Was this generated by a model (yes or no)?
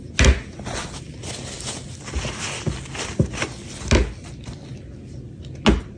no